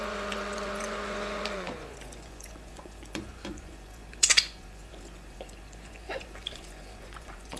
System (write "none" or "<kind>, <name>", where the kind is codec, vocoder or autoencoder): vocoder, Vocos